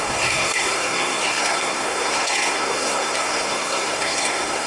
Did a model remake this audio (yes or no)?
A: yes